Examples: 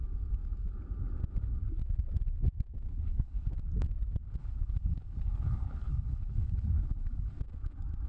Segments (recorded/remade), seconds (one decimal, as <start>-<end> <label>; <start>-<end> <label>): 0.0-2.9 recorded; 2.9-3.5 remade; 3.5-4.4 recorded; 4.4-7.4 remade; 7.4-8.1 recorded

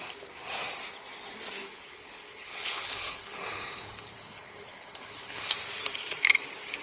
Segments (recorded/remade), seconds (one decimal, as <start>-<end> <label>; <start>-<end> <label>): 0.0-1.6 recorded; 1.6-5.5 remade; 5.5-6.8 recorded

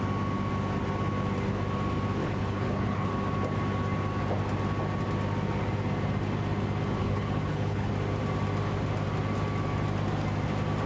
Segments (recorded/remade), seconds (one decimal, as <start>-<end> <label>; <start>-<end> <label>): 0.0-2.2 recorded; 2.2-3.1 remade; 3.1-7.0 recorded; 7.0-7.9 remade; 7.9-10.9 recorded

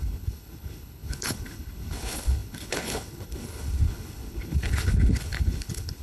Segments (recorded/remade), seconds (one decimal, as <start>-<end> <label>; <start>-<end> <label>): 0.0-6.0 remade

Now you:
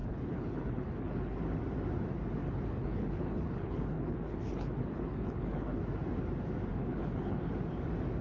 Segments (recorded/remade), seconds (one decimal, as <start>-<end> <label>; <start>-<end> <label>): 0.0-1.4 remade; 1.4-2.4 recorded; 2.4-5.8 remade; 5.8-6.7 recorded; 6.7-7.5 remade; 7.5-8.2 recorded